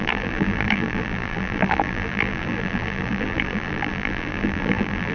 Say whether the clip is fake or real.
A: fake